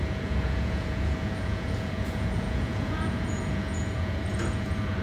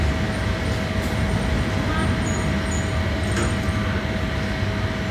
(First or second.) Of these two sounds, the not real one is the first